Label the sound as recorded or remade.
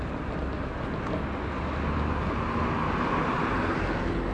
recorded